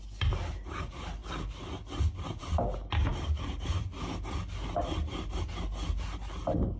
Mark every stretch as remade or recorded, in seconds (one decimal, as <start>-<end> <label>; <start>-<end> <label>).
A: 0.0-6.8 recorded